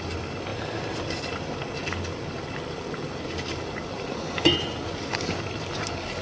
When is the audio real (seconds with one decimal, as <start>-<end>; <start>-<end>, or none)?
0.0-6.2